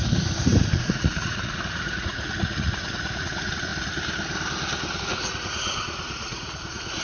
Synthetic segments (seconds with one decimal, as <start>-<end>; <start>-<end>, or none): 0.7-3.7; 5.0-7.0